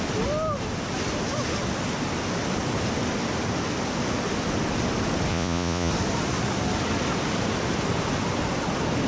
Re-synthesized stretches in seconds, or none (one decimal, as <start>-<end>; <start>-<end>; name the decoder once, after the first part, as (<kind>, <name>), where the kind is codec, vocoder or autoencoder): 5.3-5.9 (vocoder, Vocos)